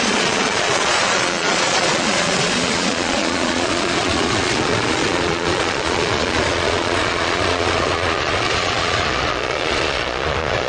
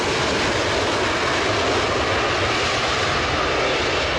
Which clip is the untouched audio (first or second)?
second